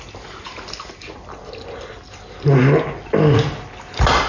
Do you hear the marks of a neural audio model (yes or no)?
no